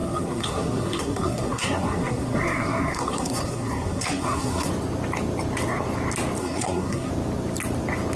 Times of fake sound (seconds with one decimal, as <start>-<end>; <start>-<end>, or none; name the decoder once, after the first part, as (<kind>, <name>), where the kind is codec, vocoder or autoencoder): 0.0-4.7 (codec, SNAC); 6.4-7.1